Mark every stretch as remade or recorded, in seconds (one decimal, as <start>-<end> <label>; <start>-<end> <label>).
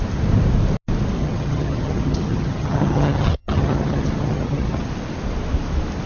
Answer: 0.0-1.2 recorded; 1.2-4.9 remade; 4.9-6.1 recorded